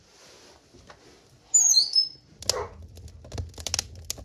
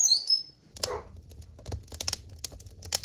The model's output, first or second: second